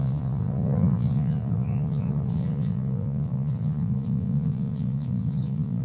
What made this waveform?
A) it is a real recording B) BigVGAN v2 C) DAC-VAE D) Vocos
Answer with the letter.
D